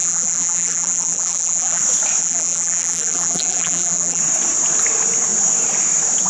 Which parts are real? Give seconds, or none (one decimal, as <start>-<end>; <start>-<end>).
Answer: 1.8-2.2; 4.2-6.3